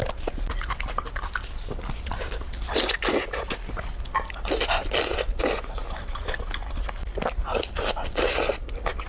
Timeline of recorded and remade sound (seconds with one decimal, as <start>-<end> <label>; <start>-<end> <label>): 0.0-5.8 recorded; 5.8-6.4 remade; 6.4-9.1 recorded